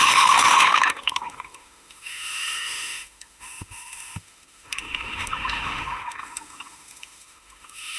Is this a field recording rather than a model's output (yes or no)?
no